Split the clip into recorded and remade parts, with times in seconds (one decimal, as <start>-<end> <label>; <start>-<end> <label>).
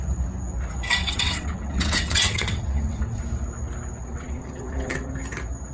0.0-1.0 recorded; 1.0-3.2 remade; 3.2-4.1 recorded; 4.1-5.1 remade; 5.1-5.7 recorded